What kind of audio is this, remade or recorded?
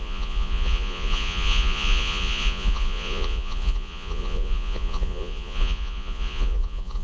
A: remade